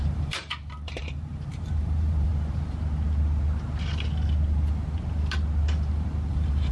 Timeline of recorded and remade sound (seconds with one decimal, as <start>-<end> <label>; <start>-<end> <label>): 0.0-2.3 remade; 2.3-6.3 recorded; 6.3-6.7 remade